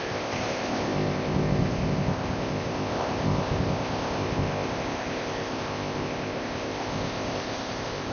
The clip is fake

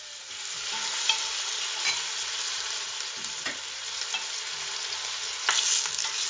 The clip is real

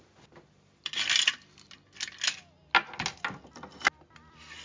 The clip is real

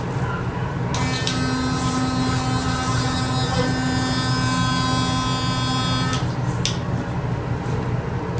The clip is real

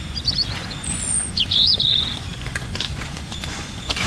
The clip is fake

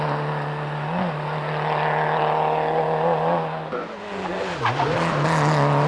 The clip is real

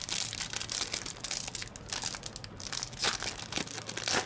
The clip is real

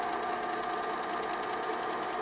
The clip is real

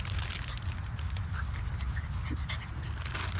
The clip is fake